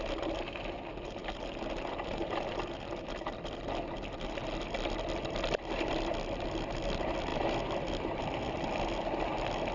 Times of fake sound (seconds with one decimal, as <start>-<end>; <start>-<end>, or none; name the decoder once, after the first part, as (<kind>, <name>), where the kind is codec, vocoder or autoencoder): none